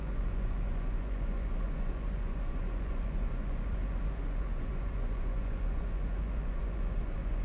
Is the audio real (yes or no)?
no